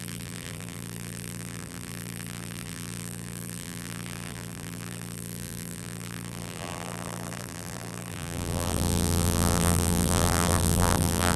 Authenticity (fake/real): fake